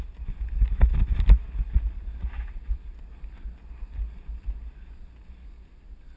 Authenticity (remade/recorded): recorded